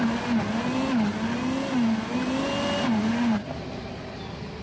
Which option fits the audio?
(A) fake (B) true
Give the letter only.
B